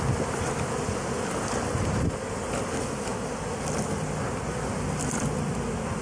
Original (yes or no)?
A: yes